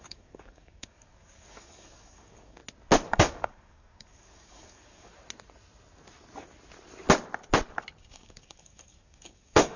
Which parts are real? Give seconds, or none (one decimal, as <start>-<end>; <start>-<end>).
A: 2.6-3.1; 5.1-8.0